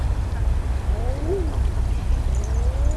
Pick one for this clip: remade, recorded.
recorded